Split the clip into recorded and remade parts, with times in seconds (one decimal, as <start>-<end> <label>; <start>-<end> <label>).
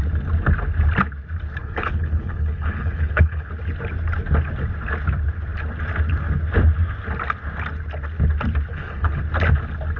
0.0-1.6 recorded; 1.6-3.5 remade; 3.5-8.7 recorded; 8.7-9.2 remade; 9.2-10.0 recorded